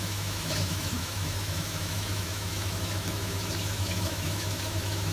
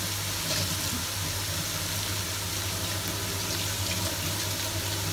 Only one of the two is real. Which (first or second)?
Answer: second